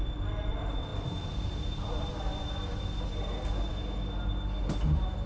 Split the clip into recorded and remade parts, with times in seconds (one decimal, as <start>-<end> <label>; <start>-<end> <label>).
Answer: 0.0-5.3 recorded